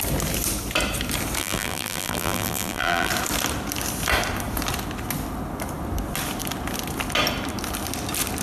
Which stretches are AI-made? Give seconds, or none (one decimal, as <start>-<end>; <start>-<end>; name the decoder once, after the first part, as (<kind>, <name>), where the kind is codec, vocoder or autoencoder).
1.4-3.1 (vocoder, BigVGAN v2)